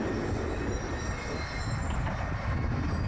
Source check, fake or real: real